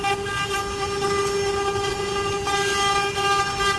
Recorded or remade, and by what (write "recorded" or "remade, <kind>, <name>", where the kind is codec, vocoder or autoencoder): recorded